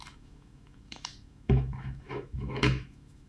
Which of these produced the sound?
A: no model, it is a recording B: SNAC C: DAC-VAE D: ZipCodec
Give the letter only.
C